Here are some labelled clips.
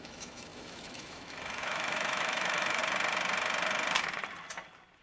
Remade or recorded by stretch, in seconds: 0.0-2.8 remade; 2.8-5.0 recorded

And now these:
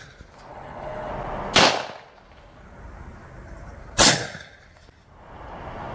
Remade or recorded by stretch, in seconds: 0.0-0.5 recorded; 0.5-1.1 remade; 1.1-5.9 recorded

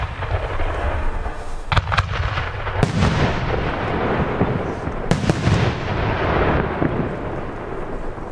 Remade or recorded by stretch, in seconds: 0.0-0.8 recorded; 0.8-1.7 remade; 1.7-8.3 recorded

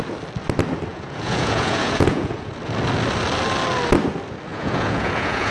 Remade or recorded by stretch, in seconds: 0.0-0.9 recorded; 0.9-2.5 remade; 2.5-4.5 recorded; 4.5-5.5 remade

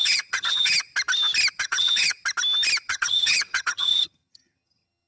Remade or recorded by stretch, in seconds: 0.0-0.9 remade; 0.9-1.5 recorded; 1.5-2.2 remade; 2.2-2.8 recorded; 2.8-5.1 remade

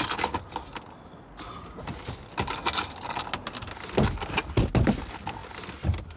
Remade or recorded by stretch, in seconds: 0.0-5.4 recorded; 5.4-6.2 remade

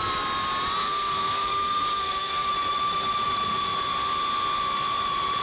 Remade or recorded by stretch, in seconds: 0.0-0.8 recorded; 0.8-2.5 remade; 2.5-5.4 recorded

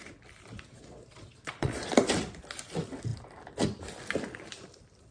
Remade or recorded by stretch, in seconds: 0.0-0.7 recorded; 0.7-1.9 remade; 1.9-5.1 recorded